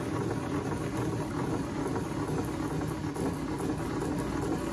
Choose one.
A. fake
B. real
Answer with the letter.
B